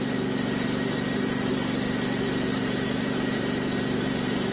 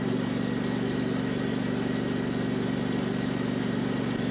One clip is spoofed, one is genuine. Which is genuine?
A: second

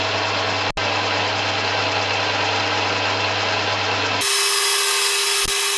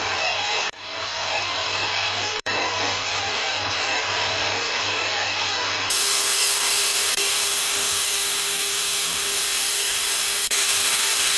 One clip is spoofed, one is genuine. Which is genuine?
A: first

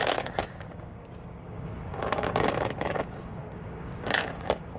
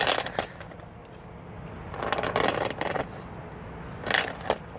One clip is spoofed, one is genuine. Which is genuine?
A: second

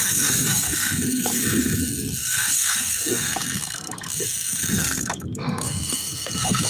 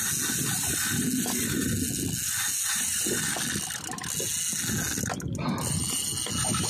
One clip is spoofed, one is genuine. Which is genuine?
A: second